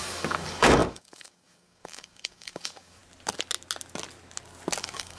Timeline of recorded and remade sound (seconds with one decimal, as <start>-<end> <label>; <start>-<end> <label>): 0.0-3.0 remade; 3.0-4.8 recorded; 4.8-5.2 remade